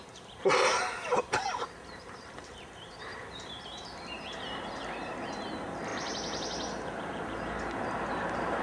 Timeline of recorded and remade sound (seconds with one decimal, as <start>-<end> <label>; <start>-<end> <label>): 0.0-8.6 remade